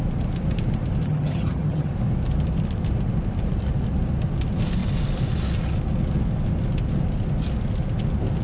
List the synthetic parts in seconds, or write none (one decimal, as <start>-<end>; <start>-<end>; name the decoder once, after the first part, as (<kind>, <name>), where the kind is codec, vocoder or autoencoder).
1.0-1.9 (vocoder, HiFi-GAN)